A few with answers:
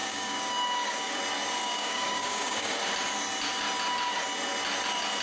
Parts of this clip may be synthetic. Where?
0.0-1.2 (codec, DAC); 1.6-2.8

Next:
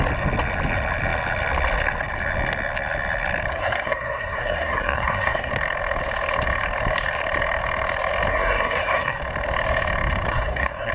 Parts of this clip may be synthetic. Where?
3.5-5.5 (codec, SNAC); 8.3-9.2; 10.3-10.9

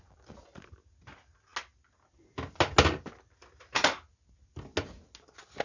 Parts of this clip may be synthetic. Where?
none